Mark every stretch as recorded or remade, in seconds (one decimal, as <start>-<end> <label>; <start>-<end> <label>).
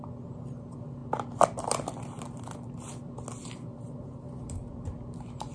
0.0-3.7 recorded; 3.7-4.7 remade; 4.7-5.5 recorded